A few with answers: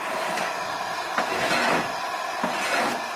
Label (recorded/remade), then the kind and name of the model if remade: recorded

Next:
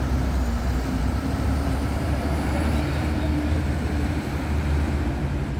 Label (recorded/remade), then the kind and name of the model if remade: remade, vocoder, BigVGAN v2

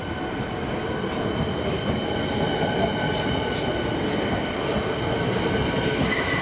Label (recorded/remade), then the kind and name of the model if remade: recorded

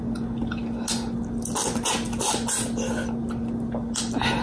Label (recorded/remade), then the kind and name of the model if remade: recorded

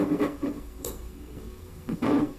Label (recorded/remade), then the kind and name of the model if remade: remade, codec, SNAC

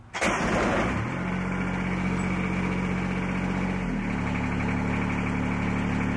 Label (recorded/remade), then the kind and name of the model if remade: recorded